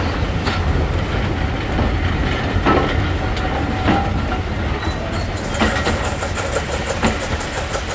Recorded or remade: recorded